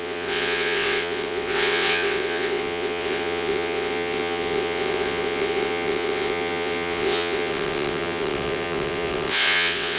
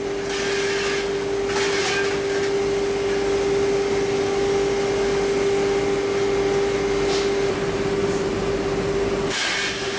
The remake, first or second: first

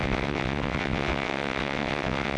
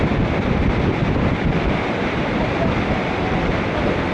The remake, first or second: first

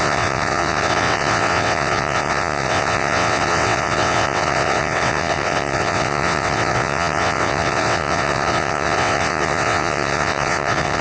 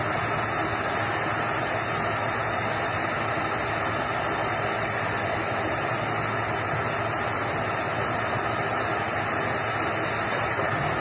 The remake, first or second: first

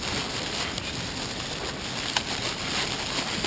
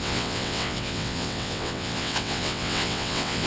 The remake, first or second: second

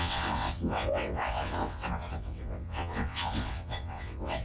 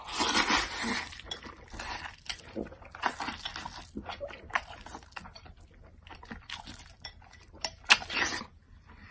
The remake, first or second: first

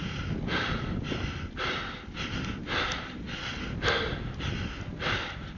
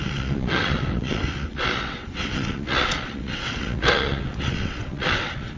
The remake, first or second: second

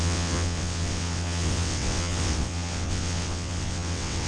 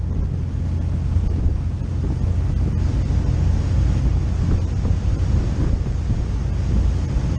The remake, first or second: first